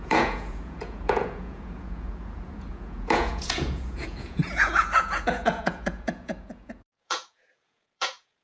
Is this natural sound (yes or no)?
no